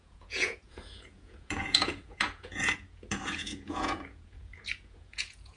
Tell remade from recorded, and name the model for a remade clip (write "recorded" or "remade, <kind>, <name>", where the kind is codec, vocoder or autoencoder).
remade, vocoder, Vocos